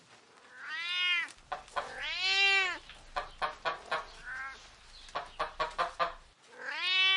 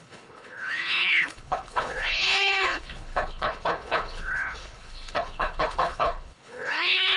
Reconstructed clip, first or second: second